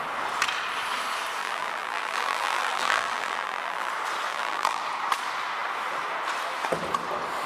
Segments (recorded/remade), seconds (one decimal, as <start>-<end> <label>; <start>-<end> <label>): 0.0-1.4 recorded; 1.4-3.9 remade; 3.9-4.3 recorded; 4.3-4.8 remade; 4.8-7.5 recorded